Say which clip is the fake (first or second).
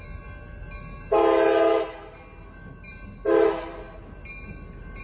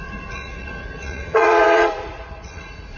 second